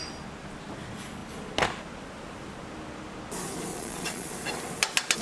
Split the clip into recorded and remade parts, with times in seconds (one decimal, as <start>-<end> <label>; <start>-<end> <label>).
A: 0.0-3.7 recorded; 3.7-4.3 remade; 4.3-5.2 recorded

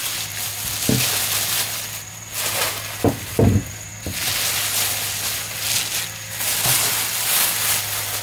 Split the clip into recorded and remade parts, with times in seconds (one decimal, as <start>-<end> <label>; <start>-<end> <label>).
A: 0.0-8.2 recorded

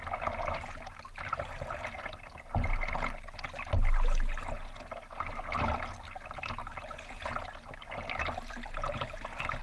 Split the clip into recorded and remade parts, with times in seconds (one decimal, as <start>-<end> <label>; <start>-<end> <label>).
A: 0.0-9.6 recorded

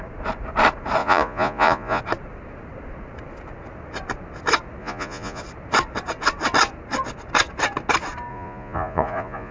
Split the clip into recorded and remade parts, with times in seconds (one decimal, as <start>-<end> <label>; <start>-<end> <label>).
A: 0.0-1.0 recorded; 1.0-2.0 remade; 2.0-4.8 recorded; 4.8-5.4 remade; 5.4-8.3 recorded; 8.3-9.5 remade

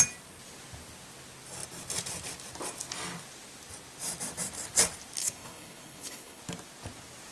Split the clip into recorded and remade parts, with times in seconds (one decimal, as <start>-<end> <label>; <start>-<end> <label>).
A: 0.0-5.2 recorded; 5.2-6.4 remade; 6.4-7.3 recorded

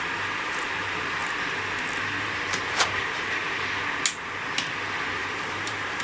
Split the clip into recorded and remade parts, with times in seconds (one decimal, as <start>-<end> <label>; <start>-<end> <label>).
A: 0.0-1.2 remade; 1.2-2.2 recorded; 2.2-3.4 remade; 3.4-5.1 recorded; 5.1-6.0 remade

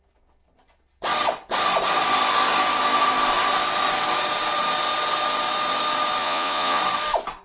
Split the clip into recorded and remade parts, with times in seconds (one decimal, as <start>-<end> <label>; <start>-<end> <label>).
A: 0.0-6.2 recorded; 6.2-6.8 remade; 6.8-7.4 recorded

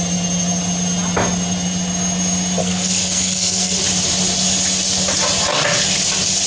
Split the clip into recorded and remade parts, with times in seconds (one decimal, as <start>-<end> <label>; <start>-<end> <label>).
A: 0.0-2.6 recorded; 2.6-3.8 remade; 3.8-6.5 recorded